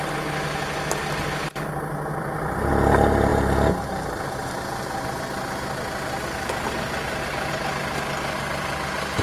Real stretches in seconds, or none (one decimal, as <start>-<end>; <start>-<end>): 0.0-2.1; 2.7-9.2